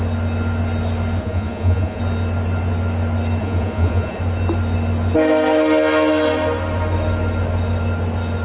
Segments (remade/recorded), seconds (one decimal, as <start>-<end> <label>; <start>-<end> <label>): 0.0-1.2 recorded; 1.2-2.0 remade; 2.0-3.4 recorded; 3.4-4.2 remade; 4.2-8.4 recorded